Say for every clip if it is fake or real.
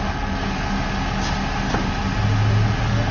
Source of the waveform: real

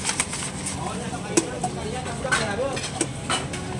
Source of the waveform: real